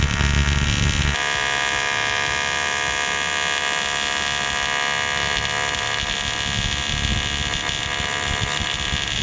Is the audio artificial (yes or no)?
no